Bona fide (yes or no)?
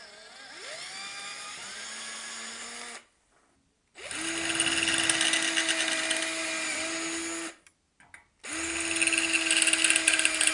yes